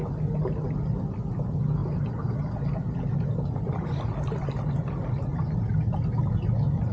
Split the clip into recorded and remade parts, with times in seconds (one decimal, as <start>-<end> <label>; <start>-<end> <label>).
0.0-6.9 recorded